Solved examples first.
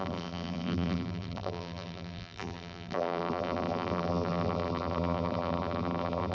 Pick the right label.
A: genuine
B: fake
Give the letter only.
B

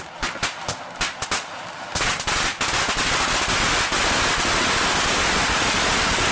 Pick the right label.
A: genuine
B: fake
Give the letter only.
A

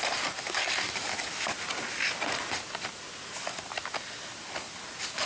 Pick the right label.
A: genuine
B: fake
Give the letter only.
A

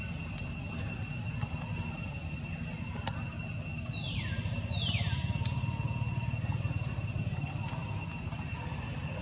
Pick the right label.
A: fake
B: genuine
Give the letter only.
B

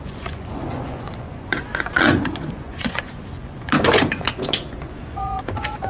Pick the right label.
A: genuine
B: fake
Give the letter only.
B